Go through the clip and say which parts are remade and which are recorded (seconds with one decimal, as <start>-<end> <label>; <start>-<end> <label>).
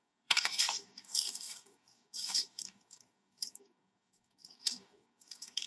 0.0-5.7 remade